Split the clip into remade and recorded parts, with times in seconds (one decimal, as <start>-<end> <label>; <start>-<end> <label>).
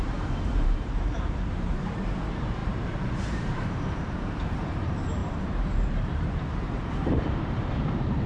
0.0-8.3 remade